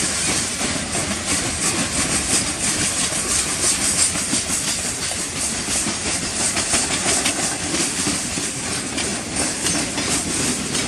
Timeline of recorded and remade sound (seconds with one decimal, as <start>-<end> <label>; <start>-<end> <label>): 0.0-7.7 recorded; 7.7-8.3 remade; 8.3-10.9 recorded